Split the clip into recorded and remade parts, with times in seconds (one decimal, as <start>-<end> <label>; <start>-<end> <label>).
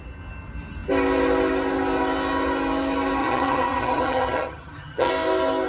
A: 0.0-3.2 recorded; 3.2-5.1 remade; 5.1-5.7 recorded